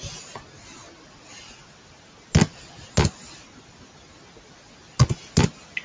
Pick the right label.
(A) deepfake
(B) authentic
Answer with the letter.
B